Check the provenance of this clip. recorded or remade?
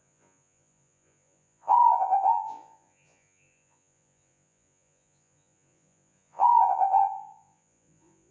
remade